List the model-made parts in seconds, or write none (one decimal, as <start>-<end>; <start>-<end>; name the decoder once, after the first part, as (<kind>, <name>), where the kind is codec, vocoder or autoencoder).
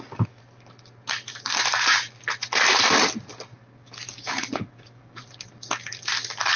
0.0-0.4 (codec, DAC); 3.5-5.2